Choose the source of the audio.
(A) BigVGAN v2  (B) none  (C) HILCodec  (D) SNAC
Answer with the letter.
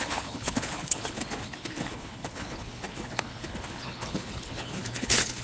C